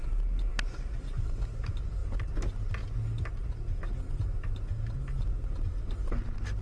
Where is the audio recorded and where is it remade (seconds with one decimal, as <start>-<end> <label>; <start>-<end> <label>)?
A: 0.0-6.6 recorded